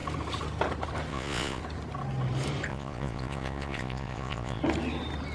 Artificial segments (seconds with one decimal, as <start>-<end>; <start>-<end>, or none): 1.1-1.6; 2.7-4.6